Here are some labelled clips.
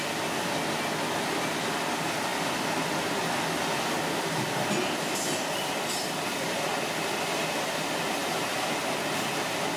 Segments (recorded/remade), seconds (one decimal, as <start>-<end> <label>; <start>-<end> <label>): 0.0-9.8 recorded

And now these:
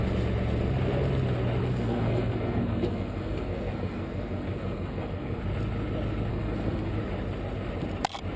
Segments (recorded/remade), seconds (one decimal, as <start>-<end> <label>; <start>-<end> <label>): 0.0-1.6 recorded; 1.6-5.4 remade; 5.4-6.3 recorded; 6.3-6.9 remade; 6.9-8.4 recorded

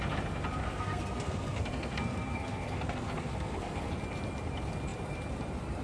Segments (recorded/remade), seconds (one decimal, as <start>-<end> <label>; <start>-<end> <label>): 0.0-0.6 recorded; 0.6-3.9 remade; 3.9-5.8 recorded